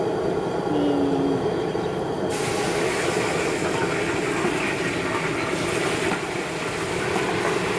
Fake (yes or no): no